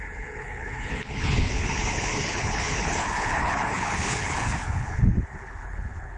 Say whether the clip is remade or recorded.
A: remade